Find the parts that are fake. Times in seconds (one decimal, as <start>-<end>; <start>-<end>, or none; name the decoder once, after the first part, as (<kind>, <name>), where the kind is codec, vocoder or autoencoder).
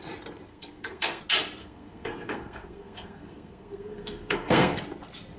0.5-1.2 (codec, SNAC); 1.6-4.8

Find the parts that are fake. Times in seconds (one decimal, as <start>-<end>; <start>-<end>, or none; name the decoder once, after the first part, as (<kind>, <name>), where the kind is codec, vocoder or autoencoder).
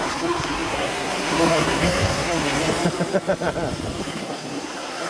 0.0-2.6 (codec, SNAC); 4.0-5.1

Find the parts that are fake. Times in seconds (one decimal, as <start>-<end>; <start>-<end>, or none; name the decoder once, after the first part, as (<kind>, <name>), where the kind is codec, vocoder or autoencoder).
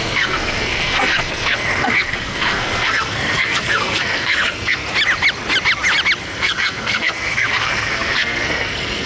0.0-4.8 (codec, SNAC); 6.2-9.1